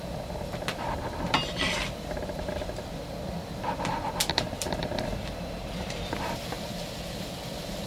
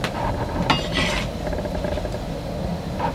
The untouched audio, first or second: second